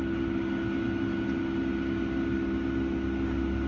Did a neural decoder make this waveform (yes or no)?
no